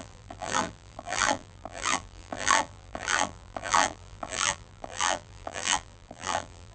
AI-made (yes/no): yes